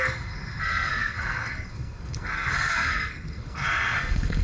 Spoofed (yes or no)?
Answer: yes